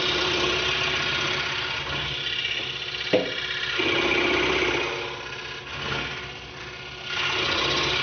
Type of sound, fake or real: real